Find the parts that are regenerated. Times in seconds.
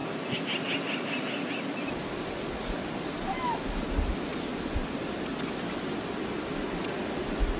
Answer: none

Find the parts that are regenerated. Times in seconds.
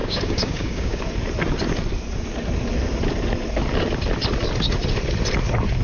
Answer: 0.0-1.0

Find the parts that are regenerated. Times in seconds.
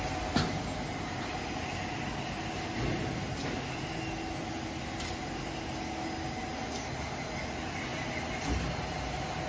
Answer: none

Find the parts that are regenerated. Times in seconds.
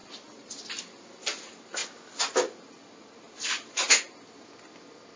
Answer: none